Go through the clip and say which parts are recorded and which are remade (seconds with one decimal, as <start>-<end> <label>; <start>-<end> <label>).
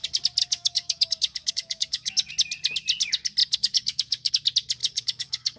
0.0-0.4 recorded; 0.4-2.3 remade; 2.3-3.4 recorded; 3.4-4.3 remade; 4.3-4.8 recorded; 4.8-5.6 remade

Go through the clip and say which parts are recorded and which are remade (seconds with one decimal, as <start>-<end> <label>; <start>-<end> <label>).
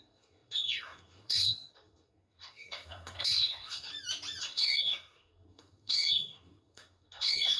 0.0-3.9 remade; 3.9-4.4 recorded; 4.4-7.6 remade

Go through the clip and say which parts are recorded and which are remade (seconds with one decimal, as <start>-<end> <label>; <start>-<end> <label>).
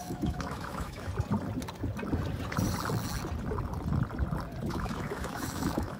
0.0-1.1 remade; 1.1-4.7 recorded; 4.7-6.0 remade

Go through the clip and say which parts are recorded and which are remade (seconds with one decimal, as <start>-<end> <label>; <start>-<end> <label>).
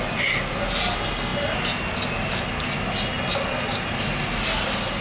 0.0-5.0 recorded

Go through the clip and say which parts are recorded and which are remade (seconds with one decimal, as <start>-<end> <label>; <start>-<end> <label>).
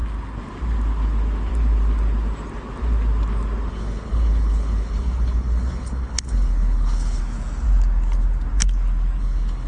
0.0-3.7 recorded; 3.7-7.2 remade; 7.2-9.2 recorded; 9.2-9.7 remade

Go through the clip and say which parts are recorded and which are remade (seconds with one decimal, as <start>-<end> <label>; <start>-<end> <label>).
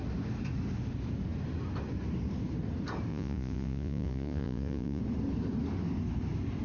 0.0-3.1 recorded; 3.1-5.0 remade; 5.0-6.6 recorded